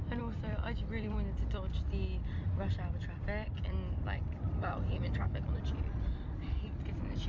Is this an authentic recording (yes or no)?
no